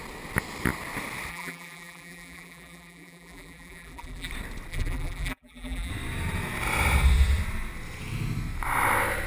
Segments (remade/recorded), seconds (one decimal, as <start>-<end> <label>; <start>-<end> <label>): 0.0-1.3 recorded; 1.3-4.3 remade; 4.3-4.7 recorded; 4.7-5.9 remade; 5.9-9.3 recorded